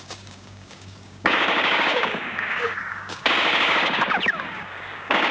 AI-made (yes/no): yes